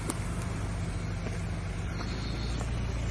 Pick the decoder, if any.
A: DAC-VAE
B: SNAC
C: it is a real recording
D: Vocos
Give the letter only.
C